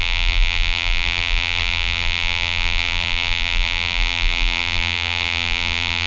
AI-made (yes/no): yes